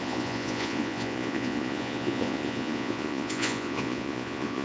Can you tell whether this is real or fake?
fake